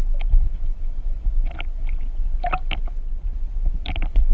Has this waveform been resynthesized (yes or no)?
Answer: no